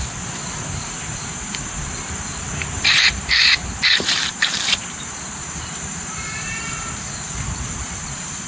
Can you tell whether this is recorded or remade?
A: remade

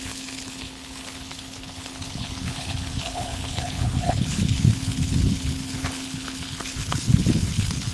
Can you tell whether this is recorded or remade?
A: remade